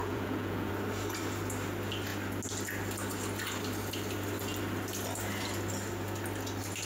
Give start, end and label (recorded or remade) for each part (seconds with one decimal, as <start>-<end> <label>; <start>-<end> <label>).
0.0-0.7 remade; 0.7-6.8 recorded